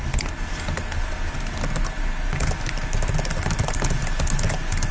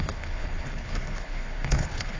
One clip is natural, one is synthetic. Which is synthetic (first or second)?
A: second